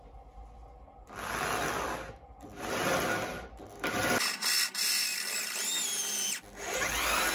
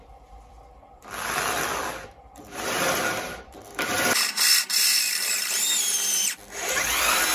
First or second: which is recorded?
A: first